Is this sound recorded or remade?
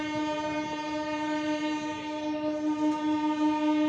recorded